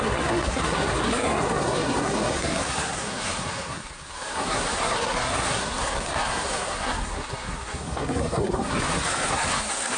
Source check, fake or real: fake